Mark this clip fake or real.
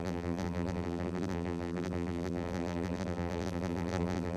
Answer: fake